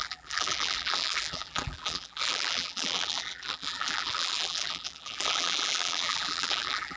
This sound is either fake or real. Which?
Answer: fake